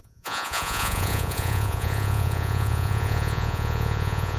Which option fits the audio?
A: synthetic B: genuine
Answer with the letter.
A